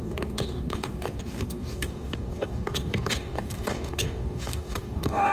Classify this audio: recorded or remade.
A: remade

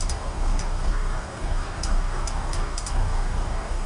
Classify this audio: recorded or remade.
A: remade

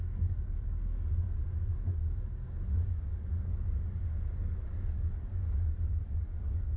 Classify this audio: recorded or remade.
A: remade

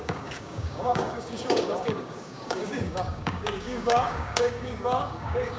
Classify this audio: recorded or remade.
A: remade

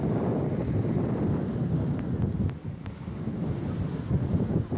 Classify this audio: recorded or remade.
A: recorded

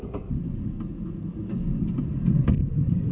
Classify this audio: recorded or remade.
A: recorded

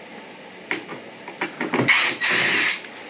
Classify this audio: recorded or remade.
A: recorded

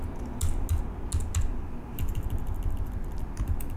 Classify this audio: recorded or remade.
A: recorded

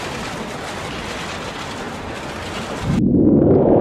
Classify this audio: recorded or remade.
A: recorded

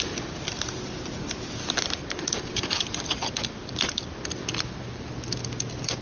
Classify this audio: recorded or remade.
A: recorded